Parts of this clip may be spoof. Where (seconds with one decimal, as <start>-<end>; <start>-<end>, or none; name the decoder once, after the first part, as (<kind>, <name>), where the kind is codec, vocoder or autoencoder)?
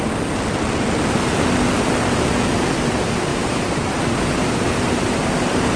3.3-5.8 (vocoder, BigVGAN v2)